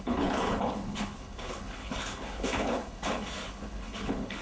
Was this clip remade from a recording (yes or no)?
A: yes